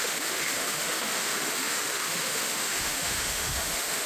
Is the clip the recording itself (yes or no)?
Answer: no